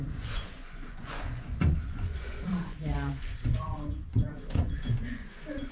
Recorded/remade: remade